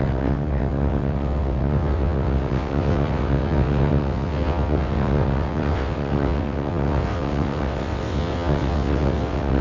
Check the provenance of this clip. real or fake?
fake